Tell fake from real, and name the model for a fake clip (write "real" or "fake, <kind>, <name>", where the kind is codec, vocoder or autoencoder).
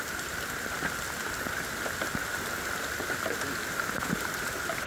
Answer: real